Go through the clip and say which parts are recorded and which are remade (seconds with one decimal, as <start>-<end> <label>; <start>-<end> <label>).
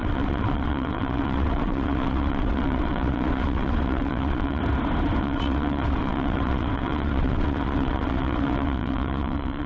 0.0-4.6 remade; 4.6-5.2 recorded; 5.2-9.7 remade